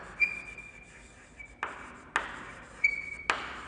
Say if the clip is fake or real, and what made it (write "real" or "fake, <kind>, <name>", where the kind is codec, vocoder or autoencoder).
real